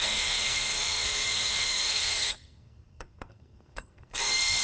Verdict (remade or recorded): remade